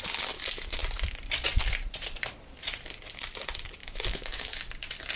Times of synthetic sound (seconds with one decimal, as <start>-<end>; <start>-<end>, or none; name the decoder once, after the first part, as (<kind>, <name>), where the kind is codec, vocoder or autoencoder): 3.8-4.6 (autoencoder, DAC-VAE)